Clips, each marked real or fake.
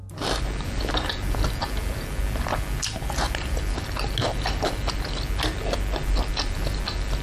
real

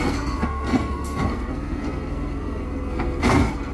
fake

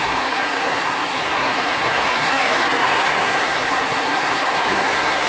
fake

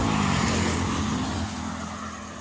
real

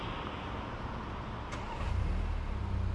real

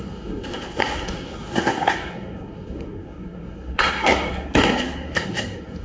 fake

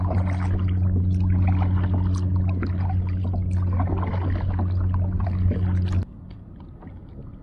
real